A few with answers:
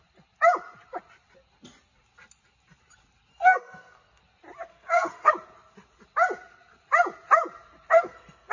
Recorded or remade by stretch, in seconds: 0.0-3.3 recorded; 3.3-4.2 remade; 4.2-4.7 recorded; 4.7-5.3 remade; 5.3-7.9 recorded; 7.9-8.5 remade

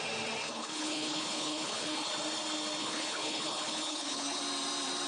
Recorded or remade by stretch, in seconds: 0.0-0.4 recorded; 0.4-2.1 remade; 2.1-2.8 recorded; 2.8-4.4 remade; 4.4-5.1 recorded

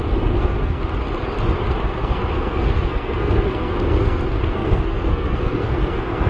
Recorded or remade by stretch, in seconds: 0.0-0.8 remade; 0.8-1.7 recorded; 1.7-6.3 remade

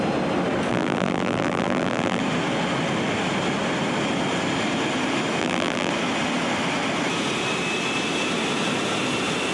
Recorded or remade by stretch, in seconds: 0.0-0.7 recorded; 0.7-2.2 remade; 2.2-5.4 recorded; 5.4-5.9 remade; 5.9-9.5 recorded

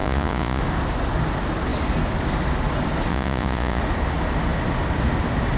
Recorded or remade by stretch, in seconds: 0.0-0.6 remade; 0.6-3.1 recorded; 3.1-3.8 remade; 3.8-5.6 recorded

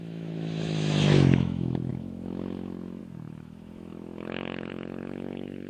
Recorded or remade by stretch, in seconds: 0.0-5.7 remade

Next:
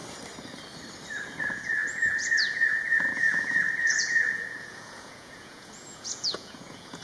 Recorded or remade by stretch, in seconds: 0.0-1.4 recorded; 1.4-7.0 remade